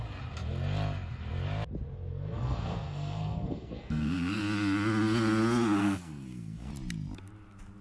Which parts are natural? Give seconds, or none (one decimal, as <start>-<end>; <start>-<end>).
0.0-2.1; 4.4-5.8; 6.7-7.8